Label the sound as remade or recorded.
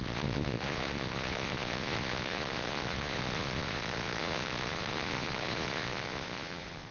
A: remade